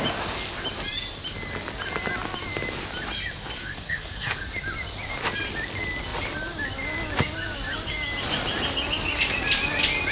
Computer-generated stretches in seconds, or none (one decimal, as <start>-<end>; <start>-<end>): 3.6-4.4